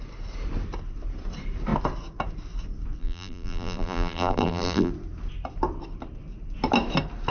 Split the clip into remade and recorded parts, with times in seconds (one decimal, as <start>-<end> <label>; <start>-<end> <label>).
0.0-3.0 recorded; 3.0-4.9 remade; 4.9-7.3 recorded